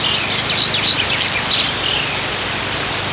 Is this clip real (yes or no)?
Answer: yes